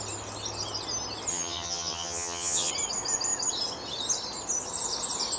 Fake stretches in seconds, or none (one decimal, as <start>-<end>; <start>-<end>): 1.3-2.7